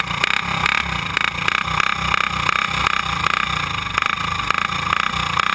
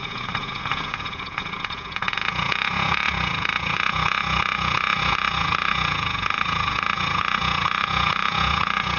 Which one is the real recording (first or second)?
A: first